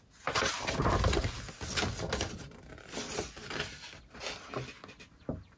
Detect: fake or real real